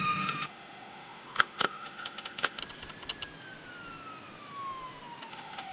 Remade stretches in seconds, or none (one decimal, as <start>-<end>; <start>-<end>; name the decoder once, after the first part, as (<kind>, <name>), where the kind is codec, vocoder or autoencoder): 0.0-2.6 (autoencoder, DAC-VAE); 5.3-5.7